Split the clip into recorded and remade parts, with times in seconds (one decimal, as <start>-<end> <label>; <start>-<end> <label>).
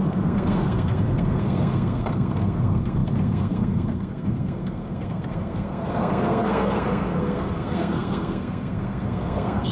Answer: 0.0-9.7 remade